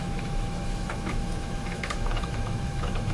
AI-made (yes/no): yes